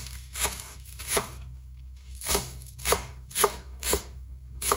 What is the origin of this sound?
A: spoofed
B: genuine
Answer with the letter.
A